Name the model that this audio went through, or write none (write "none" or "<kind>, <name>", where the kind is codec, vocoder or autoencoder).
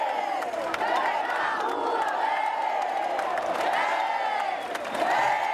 none